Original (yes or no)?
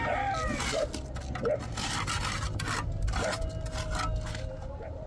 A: yes